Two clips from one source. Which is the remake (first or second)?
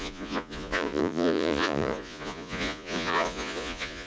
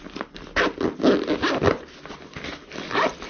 first